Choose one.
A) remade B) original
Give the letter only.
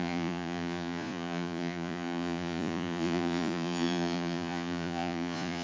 A